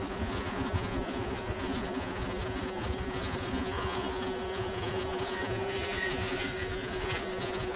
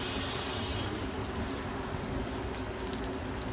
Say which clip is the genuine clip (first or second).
second